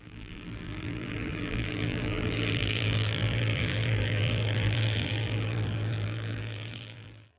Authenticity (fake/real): fake